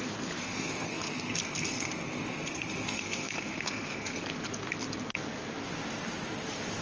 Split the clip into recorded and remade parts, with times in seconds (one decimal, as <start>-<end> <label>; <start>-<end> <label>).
0.0-0.4 recorded; 0.4-4.2 remade; 4.2-6.8 recorded